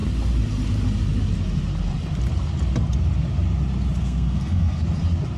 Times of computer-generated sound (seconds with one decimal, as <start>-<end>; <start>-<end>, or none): 4.0-4.8